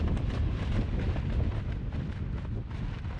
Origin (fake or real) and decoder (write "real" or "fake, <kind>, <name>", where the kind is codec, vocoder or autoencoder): real